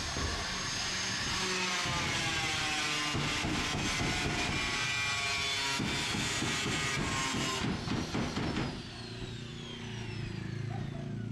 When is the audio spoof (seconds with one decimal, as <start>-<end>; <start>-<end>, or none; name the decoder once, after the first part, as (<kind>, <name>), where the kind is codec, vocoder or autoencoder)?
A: none